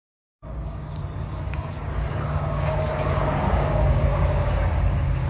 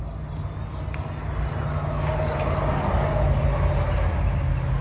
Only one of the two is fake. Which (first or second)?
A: first